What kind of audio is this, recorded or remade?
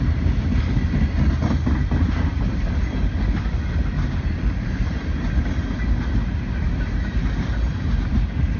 recorded